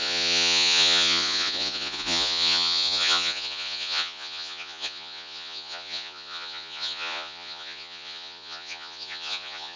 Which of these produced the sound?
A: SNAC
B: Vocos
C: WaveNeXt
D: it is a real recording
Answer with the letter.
B